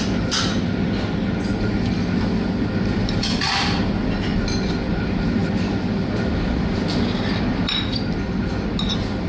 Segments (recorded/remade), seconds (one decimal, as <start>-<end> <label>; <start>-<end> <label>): 0.0-9.3 recorded